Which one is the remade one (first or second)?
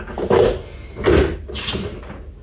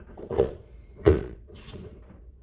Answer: second